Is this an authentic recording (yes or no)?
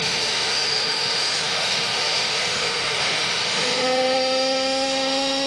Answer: no